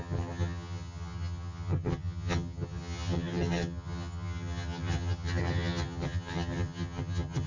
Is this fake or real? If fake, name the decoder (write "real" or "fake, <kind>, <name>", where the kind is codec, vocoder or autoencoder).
fake, vocoder, HiFi-GAN